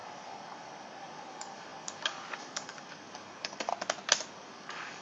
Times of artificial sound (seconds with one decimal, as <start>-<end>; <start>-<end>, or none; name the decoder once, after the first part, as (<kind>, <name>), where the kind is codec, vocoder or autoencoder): 0.0-3.7 (codec, DAC); 4.3-5.0